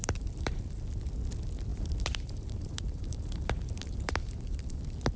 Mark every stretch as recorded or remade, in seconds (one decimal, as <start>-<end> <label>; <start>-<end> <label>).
0.0-0.8 remade; 0.8-1.7 recorded; 1.7-4.8 remade; 4.8-5.2 recorded